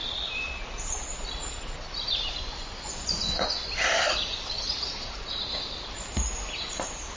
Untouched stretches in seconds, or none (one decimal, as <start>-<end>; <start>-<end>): 0.0-2.4; 3.7-7.2